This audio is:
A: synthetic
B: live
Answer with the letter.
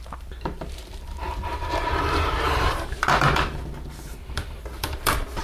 A